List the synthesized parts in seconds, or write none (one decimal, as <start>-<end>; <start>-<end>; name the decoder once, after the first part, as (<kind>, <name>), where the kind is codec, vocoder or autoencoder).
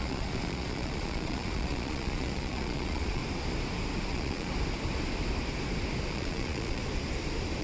0.0-3.2 (vocoder, Vocos); 4.1-4.5; 6.1-6.8